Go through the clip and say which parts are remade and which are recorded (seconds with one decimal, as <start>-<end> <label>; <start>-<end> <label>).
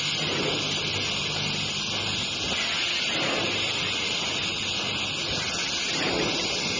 0.0-6.8 recorded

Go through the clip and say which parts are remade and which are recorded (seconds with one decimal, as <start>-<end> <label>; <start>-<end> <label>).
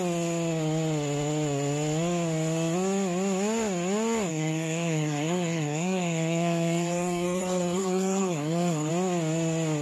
0.0-4.3 recorded; 4.3-8.9 remade; 8.9-9.8 recorded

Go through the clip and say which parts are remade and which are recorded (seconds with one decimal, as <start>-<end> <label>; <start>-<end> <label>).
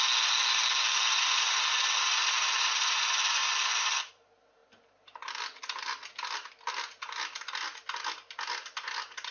0.0-9.3 recorded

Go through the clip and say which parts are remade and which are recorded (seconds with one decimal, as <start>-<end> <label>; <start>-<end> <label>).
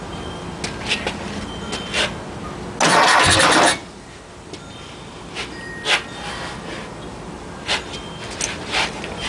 0.0-9.3 recorded